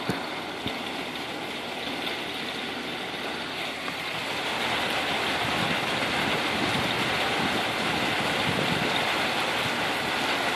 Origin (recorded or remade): recorded